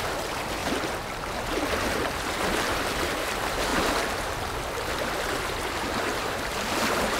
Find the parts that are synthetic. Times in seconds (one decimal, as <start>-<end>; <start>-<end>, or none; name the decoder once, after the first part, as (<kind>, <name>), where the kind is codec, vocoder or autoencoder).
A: none